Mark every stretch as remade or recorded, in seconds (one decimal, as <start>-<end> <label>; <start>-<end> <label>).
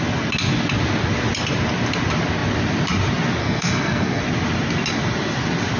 0.0-3.4 recorded; 3.4-4.2 remade; 4.2-5.8 recorded